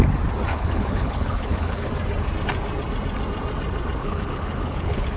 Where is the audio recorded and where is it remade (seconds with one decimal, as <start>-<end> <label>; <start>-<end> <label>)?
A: 0.0-0.5 recorded; 0.5-1.9 remade; 1.9-4.0 recorded; 4.0-5.2 remade